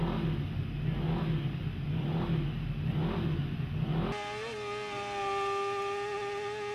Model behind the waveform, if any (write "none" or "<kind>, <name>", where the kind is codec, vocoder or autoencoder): none